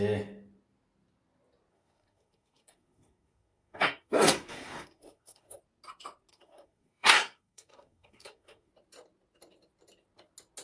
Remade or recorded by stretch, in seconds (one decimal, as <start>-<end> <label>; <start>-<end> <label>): 0.0-1.7 recorded; 1.7-5.6 remade; 5.6-6.3 recorded; 6.3-8.7 remade; 8.7-10.6 recorded